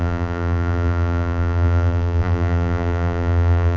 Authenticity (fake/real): fake